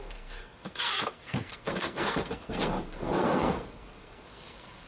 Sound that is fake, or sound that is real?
fake